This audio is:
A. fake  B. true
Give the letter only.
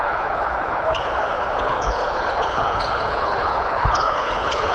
A